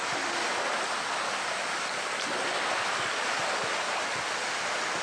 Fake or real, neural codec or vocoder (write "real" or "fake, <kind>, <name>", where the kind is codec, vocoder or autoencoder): real